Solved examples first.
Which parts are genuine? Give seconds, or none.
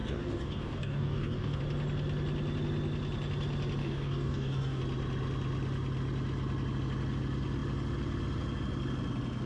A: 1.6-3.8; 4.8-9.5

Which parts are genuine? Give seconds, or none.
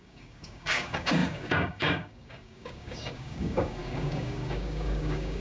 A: none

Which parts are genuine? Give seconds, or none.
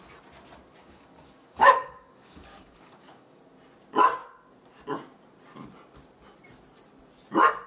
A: 0.0-0.8; 3.4-7.7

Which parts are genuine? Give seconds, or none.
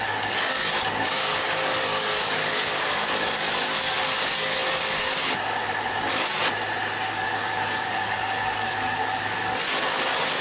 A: 6.4-7.1